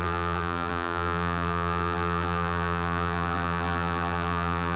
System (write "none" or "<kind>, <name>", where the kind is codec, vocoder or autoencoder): vocoder, BigVGAN v2